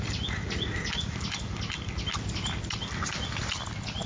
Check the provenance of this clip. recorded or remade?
recorded